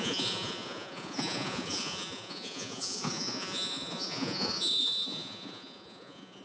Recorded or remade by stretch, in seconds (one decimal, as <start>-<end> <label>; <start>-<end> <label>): 0.0-6.4 remade